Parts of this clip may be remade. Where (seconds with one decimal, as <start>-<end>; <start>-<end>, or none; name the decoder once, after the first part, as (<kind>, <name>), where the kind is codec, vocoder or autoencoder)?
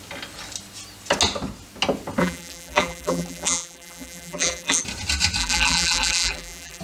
2.2-4.8 (vocoder, BigVGAN v2); 5.4-6.8